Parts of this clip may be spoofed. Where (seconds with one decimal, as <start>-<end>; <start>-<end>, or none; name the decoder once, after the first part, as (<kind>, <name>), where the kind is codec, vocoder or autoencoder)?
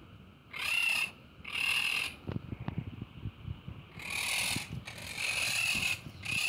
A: none